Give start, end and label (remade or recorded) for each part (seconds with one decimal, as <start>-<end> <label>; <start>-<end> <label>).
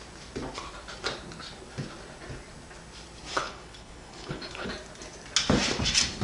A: 0.0-3.3 recorded; 3.3-4.7 remade; 4.7-6.2 recorded